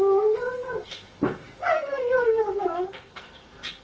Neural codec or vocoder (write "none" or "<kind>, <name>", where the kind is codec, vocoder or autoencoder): codec, SNAC